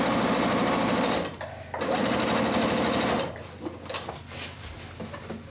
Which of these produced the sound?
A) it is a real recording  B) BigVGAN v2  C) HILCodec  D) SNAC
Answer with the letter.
A